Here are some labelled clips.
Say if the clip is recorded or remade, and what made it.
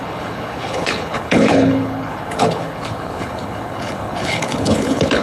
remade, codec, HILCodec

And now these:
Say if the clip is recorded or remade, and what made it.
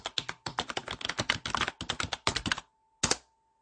recorded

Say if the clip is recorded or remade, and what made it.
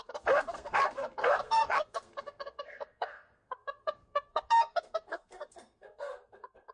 remade, codec, SNAC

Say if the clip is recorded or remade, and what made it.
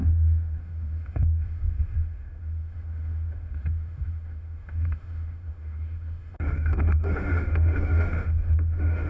remade, autoencoder, DAC-VAE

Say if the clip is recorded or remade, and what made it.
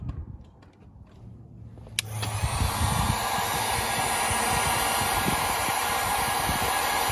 recorded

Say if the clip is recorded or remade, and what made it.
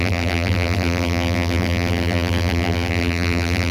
remade, vocoder, BigVGAN v2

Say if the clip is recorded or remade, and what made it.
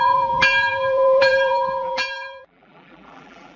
remade, vocoder, BigVGAN v2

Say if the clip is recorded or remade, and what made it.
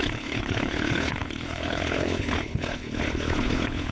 remade, codec, HILCodec